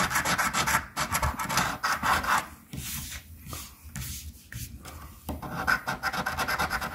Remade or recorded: recorded